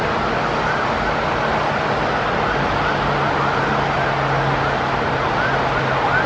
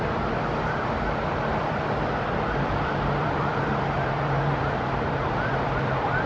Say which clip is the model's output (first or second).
second